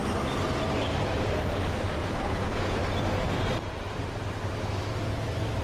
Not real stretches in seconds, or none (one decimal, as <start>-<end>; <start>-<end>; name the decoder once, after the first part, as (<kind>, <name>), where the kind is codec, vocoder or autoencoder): 2.0-2.8 (vocoder, Vocos)